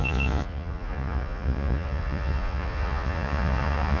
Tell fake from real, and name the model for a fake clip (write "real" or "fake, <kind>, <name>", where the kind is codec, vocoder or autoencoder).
fake, vocoder, Vocos